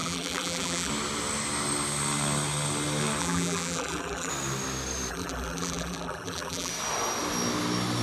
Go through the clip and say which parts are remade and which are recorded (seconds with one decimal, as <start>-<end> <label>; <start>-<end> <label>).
0.0-0.9 remade; 0.9-3.2 recorded; 3.2-4.3 remade; 4.3-5.1 recorded; 5.1-6.7 remade; 6.7-8.0 recorded